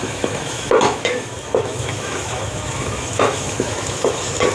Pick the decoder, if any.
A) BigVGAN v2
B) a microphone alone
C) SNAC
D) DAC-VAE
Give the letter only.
D